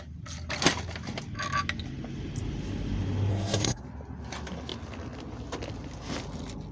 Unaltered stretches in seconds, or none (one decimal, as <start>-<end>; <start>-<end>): 0.0-3.3; 3.8-6.7